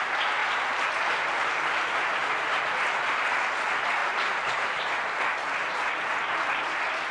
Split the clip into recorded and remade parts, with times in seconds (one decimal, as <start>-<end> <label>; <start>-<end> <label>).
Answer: 0.0-0.4 recorded; 0.4-2.6 remade; 2.6-4.0 recorded; 4.0-5.0 remade; 5.0-5.6 recorded; 5.6-6.5 remade; 6.5-7.1 recorded